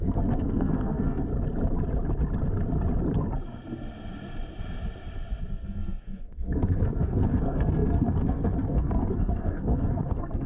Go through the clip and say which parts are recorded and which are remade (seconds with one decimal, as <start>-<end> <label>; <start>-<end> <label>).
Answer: 0.0-1.3 remade; 1.3-5.5 recorded; 5.5-10.5 remade